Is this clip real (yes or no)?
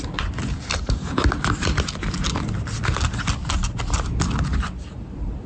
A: yes